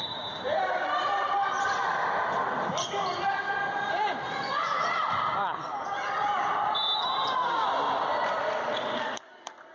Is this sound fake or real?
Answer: fake